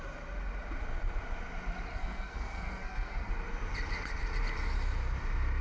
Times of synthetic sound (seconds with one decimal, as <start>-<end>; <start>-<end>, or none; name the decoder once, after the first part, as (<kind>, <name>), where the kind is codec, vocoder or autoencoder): 1.9-3.3 (codec, SNAC)